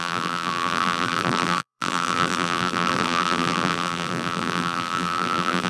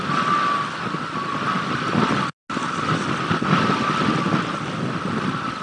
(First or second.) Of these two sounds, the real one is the second